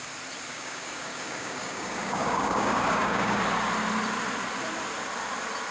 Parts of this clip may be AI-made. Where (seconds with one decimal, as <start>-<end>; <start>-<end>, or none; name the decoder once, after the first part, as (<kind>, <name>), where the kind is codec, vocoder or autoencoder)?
0.5-3.4 (codec, DAC)